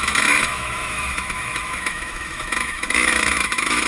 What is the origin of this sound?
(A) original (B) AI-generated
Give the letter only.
B